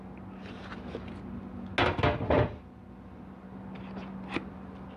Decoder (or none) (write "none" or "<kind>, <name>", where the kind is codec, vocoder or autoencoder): none